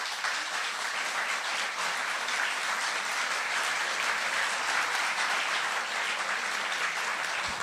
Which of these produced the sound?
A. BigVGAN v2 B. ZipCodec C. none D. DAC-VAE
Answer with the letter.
A